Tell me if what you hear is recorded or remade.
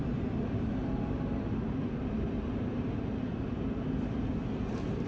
recorded